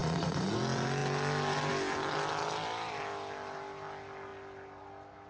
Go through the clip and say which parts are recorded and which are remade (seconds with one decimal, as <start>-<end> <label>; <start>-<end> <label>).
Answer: 0.0-0.6 remade; 0.6-5.3 recorded